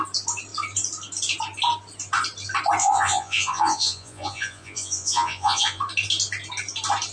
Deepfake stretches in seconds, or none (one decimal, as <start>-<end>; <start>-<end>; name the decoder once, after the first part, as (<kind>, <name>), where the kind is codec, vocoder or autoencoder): 2.8-5.8 (vocoder, Vocos)